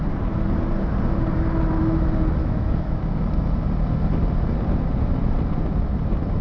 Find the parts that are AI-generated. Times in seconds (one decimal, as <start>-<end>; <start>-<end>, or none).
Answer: 2.4-3.0